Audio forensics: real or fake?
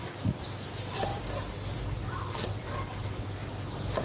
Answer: real